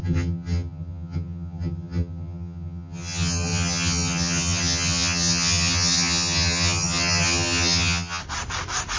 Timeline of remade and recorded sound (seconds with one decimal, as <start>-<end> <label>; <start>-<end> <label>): 0.0-8.2 remade; 8.2-9.0 recorded